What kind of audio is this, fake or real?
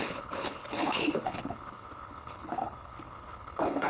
fake